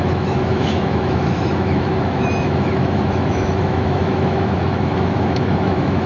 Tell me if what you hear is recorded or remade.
remade